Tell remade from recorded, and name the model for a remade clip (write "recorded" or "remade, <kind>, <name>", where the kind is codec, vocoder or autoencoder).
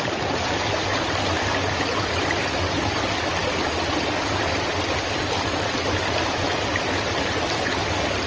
recorded